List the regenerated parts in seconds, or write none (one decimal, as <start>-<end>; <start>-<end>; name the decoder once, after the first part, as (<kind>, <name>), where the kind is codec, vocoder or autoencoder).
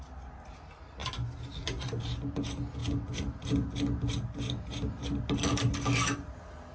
none